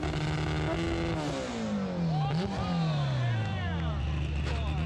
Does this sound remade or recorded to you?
recorded